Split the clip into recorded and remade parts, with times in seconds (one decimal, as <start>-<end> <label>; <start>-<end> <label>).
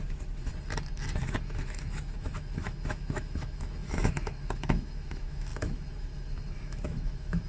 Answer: 0.0-0.5 remade; 0.5-1.2 recorded; 1.2-7.5 remade